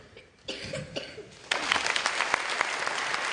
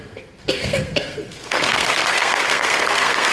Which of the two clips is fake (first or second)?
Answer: second